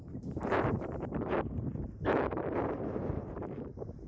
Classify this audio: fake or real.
fake